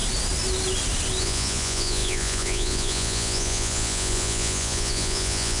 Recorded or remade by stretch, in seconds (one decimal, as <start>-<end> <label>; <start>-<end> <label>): 0.0-1.2 recorded; 1.2-5.6 remade